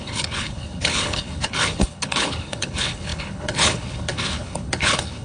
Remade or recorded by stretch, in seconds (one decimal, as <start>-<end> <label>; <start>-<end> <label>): 0.0-5.2 remade